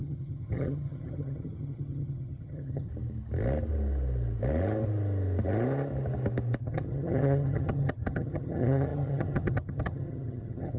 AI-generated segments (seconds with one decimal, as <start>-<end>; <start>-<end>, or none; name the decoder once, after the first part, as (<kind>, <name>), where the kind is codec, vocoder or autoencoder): 0.0-2.9 (vocoder, HiFi-GAN); 6.6-10.8